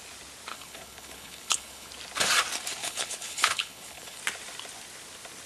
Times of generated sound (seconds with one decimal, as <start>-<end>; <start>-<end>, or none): 0.5-1.9; 2.8-4.2